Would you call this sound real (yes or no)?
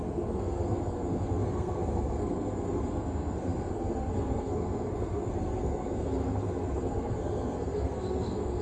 no